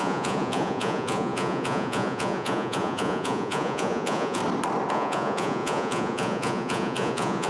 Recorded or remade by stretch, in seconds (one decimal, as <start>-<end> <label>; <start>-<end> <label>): 0.0-4.4 remade; 4.4-4.9 recorded; 4.9-7.5 remade